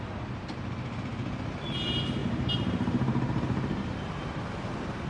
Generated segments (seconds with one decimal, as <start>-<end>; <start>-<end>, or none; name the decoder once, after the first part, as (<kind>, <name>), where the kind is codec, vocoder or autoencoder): 2.2-4.4 (vocoder, BigVGAN v2)